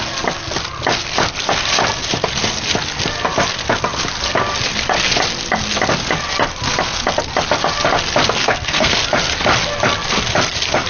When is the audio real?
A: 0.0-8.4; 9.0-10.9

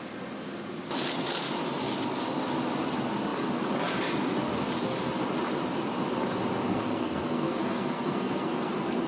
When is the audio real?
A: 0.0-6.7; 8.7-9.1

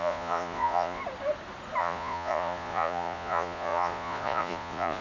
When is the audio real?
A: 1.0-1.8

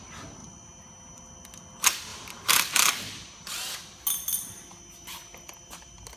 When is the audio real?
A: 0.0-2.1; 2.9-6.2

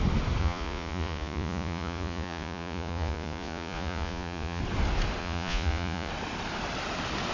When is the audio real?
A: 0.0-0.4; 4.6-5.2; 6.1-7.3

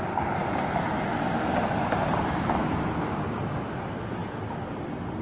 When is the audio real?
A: 0.0-5.2

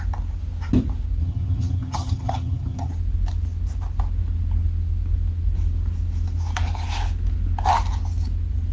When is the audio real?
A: 0.0-1.2; 2.9-8.7

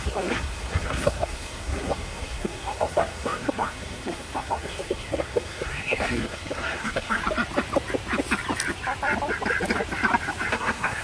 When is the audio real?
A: 7.2-10.5